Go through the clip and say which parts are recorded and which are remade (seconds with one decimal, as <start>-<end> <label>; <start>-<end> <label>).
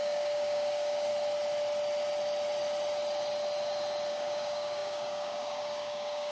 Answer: 0.0-1.1 remade; 1.1-4.1 recorded; 4.1-6.3 remade